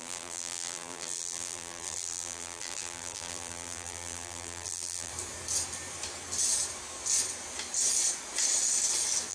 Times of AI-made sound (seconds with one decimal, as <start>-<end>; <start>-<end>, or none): 0.0-5.1

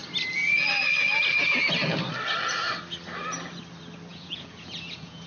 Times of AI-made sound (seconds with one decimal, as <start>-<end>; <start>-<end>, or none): 4.1-5.3